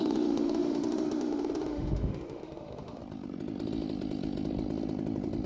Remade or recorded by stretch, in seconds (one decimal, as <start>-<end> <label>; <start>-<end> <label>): 0.0-3.0 remade; 3.0-5.5 recorded